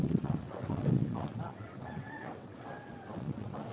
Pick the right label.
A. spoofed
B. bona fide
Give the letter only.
A